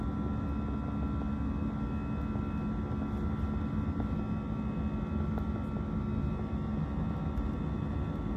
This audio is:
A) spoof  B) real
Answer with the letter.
B